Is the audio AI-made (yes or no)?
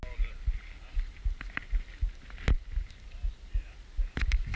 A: no